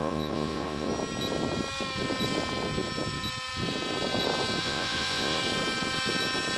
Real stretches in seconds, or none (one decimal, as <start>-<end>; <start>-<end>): 0.9-4.6; 5.4-6.6

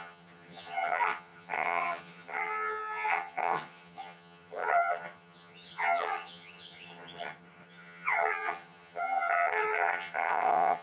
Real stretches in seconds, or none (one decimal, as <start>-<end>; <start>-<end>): none

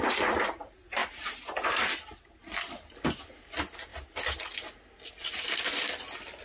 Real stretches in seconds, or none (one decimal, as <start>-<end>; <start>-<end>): 0.0-3.9; 5.1-6.4

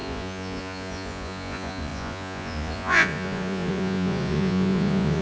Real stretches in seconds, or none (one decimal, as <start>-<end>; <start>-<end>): none

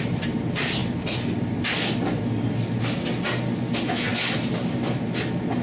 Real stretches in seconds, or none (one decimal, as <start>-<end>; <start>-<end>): 0.0-5.6

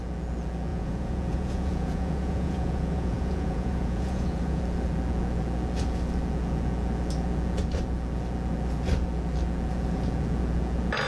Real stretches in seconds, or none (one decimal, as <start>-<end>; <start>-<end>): 0.0-0.7; 4.6-11.1

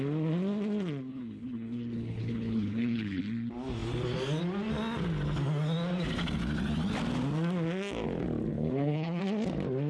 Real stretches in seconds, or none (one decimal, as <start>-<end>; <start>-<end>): 0.0-1.1; 3.2-8.5; 9.2-9.9